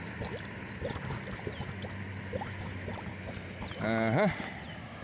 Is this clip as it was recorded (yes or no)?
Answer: yes